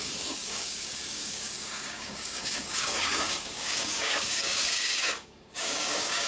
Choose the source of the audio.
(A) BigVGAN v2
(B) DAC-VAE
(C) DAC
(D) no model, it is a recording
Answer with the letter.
C